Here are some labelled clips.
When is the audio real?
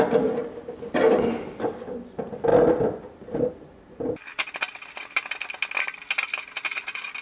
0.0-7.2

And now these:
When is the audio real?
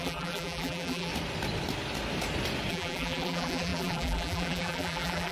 1.1-2.7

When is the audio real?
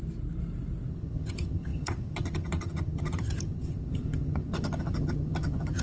0.0-0.9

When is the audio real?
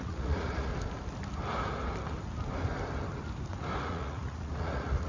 0.7-3.8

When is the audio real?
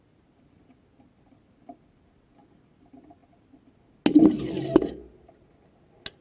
0.0-6.2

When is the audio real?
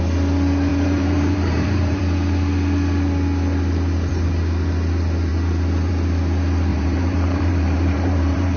0.0-0.7; 2.0-6.7